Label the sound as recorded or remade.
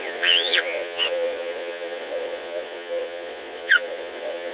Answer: remade